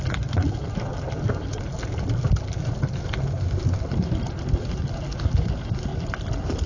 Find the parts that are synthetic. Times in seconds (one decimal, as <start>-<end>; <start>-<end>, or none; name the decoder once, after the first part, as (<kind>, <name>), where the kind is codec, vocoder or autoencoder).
5.9-6.7 (vocoder, BigVGAN v2)